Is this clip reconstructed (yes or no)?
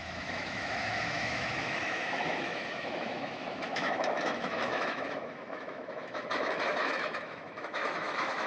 yes